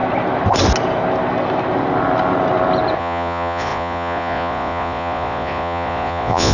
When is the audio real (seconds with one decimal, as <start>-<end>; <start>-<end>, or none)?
0.0-3.0